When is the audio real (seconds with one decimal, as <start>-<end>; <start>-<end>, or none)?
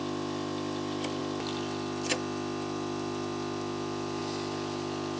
0.0-5.2